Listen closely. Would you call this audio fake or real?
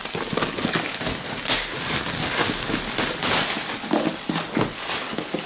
real